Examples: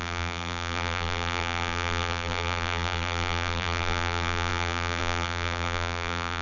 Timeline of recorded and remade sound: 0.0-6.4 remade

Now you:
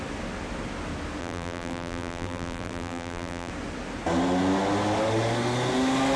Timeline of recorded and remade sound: 0.0-1.2 recorded; 1.2-3.5 remade; 3.5-6.2 recorded

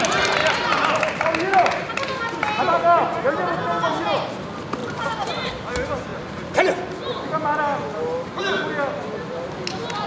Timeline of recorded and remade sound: 0.0-0.4 recorded; 0.4-2.0 remade; 2.0-4.8 recorded; 4.8-5.5 remade; 5.5-10.1 recorded